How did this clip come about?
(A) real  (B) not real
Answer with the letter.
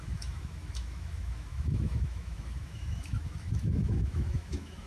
B